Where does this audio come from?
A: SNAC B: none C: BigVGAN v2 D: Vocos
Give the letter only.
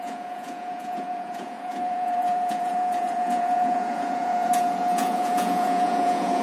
D